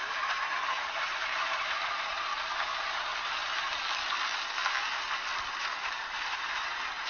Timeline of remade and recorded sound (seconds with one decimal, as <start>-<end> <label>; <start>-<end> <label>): 0.0-2.3 remade; 2.3-5.6 recorded; 5.6-7.1 remade